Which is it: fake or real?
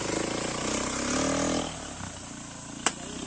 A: real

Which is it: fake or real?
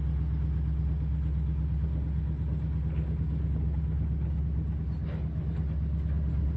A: real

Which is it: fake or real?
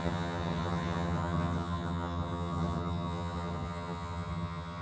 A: fake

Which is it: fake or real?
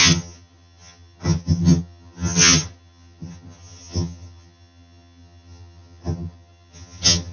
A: fake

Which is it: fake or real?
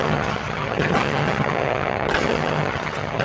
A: fake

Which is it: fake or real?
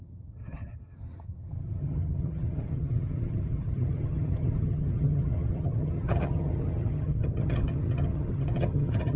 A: fake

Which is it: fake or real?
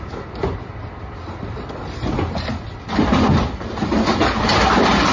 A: real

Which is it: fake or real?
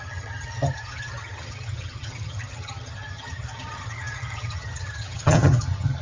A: fake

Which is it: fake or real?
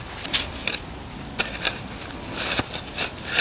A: real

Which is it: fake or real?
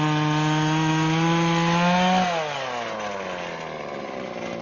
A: real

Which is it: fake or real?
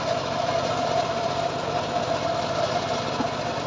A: real